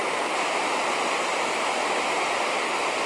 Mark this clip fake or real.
real